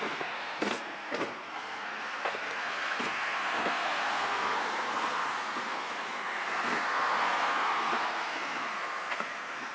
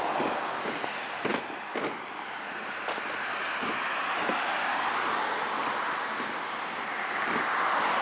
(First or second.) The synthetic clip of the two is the first